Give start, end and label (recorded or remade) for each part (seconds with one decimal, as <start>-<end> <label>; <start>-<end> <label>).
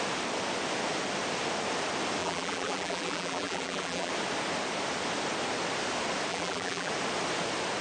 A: 0.0-2.2 recorded; 2.2-4.1 remade; 4.1-6.3 recorded; 6.3-6.9 remade; 6.9-7.8 recorded